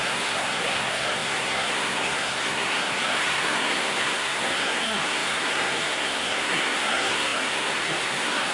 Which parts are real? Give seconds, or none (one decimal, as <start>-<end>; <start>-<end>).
none